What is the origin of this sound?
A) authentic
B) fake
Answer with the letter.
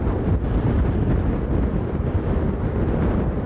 A